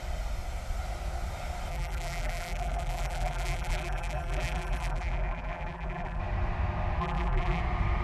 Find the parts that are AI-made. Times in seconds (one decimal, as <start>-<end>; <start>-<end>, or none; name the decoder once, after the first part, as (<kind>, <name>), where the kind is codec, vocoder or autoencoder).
1.7-6.2 (vocoder, BigVGAN v2); 7.0-7.6